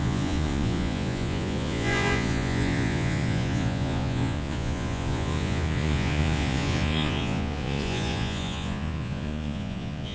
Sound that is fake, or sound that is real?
fake